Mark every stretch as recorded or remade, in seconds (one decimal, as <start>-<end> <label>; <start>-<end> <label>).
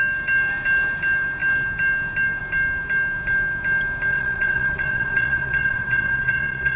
0.0-4.1 recorded; 4.1-6.8 remade